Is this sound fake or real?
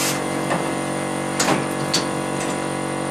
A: real